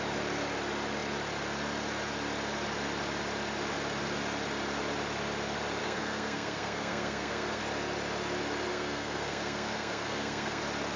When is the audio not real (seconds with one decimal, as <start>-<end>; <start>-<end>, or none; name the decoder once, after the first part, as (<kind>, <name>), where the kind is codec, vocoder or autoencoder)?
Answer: 5.8-7.6 (codec, SNAC); 8.7-10.6